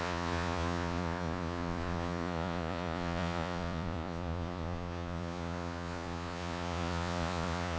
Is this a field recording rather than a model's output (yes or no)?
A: no